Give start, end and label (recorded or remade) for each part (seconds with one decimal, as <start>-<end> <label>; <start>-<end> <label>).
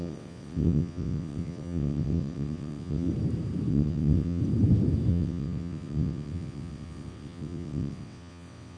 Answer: 0.0-3.1 remade; 3.1-3.7 recorded; 3.7-4.4 remade; 4.4-5.1 recorded; 5.1-8.8 remade